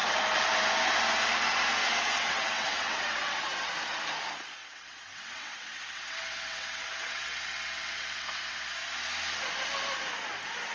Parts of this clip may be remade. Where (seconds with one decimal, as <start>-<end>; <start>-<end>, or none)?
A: 1.8-3.7; 4.6-8.7